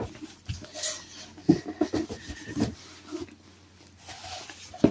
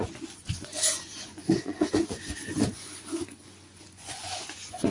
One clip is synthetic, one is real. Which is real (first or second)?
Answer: first